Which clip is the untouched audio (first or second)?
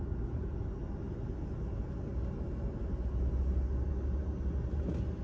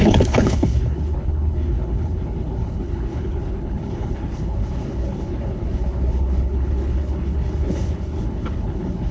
first